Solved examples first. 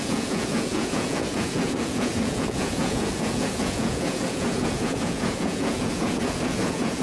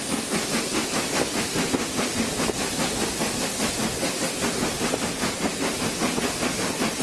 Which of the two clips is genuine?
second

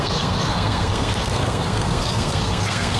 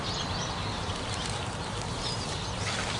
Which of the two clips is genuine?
second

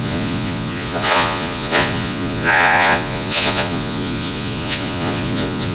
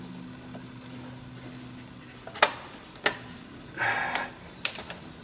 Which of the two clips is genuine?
second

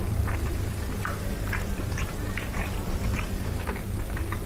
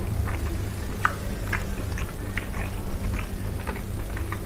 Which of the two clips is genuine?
second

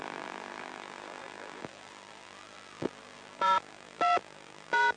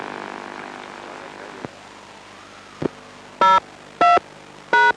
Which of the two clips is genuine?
second